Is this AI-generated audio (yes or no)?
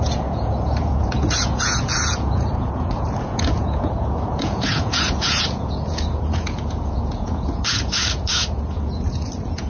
yes